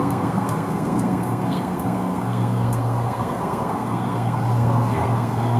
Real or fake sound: fake